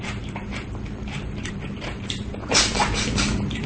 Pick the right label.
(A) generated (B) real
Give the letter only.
A